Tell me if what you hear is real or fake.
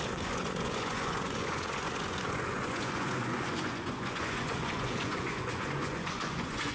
fake